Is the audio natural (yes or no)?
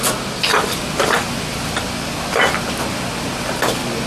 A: yes